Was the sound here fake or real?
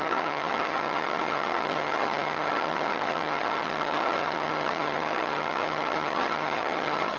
fake